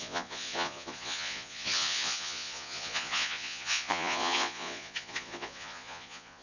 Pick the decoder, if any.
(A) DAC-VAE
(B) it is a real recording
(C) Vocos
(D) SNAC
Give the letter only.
C